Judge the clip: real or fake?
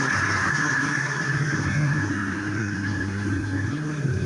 fake